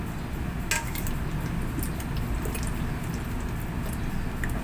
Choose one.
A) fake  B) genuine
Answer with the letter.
B